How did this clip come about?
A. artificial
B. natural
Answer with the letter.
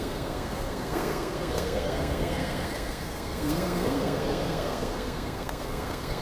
A